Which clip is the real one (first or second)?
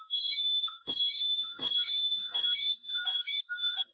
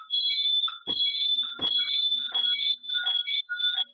second